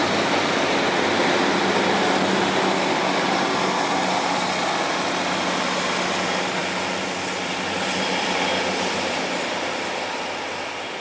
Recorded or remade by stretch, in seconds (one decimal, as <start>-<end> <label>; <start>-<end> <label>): 0.0-11.0 recorded